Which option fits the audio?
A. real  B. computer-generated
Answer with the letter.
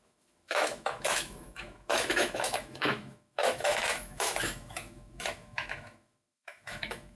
B